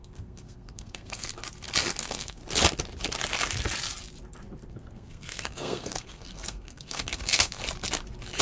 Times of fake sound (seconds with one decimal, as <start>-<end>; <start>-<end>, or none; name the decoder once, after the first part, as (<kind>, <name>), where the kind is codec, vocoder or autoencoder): 0.0-1.3 (codec, SNAC); 2.0-2.4; 4.7-7.6